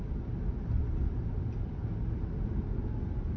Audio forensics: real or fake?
real